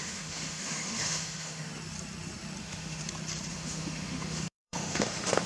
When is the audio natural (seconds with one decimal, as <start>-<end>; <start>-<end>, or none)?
1.7-2.6; 3.0-3.5